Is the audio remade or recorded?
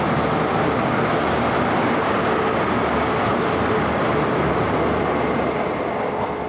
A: recorded